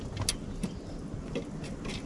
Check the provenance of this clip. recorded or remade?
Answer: recorded